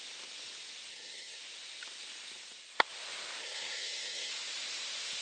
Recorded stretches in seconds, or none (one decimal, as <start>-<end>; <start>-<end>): 0.0-0.9; 1.4-3.4; 4.3-5.2